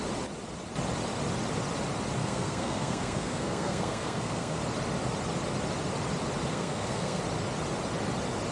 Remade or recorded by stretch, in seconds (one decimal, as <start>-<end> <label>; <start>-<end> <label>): 0.0-2.2 recorded; 2.2-4.6 remade; 4.6-6.5 recorded; 6.5-7.2 remade; 7.2-8.5 recorded